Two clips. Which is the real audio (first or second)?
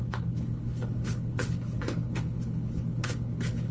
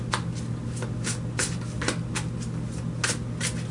second